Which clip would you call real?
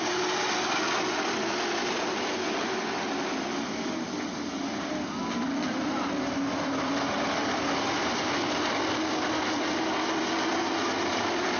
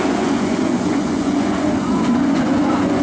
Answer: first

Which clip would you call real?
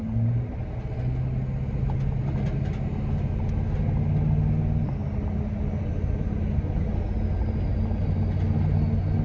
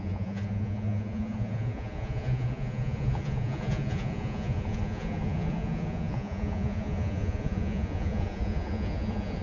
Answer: first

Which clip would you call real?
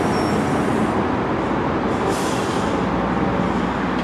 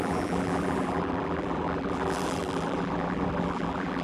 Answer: first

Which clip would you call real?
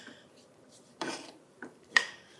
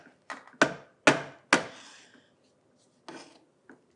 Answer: second